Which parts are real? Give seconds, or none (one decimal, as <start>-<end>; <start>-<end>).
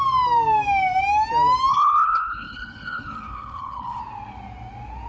0.0-1.7; 4.0-5.1